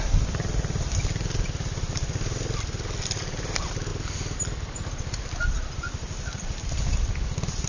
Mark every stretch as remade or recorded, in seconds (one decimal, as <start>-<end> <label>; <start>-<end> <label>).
0.0-7.7 remade